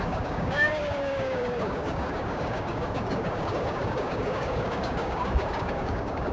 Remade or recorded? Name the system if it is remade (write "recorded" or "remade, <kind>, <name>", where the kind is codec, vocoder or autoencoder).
remade, codec, DAC